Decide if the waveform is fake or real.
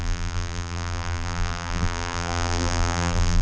fake